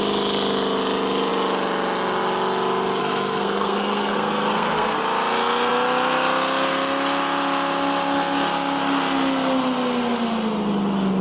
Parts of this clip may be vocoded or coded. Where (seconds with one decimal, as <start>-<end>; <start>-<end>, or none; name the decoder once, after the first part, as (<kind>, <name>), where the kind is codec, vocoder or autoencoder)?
3.0-5.0 (codec, SNAC)